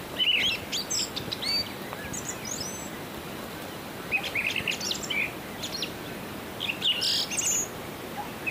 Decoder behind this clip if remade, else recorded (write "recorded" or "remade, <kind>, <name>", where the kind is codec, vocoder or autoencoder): recorded